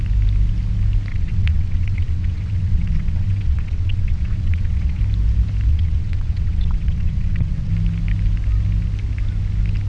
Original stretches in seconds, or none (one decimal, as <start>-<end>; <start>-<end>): 0.0-1.1; 5.0-5.7; 7.7-9.9